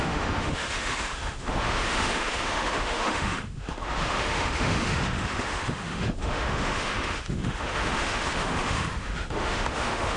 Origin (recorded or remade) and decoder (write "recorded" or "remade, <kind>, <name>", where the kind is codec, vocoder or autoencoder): remade, autoencoder, DAC-VAE